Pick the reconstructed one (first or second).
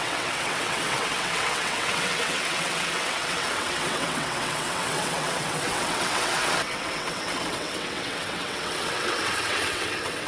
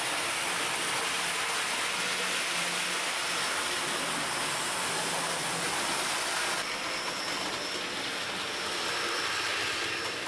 first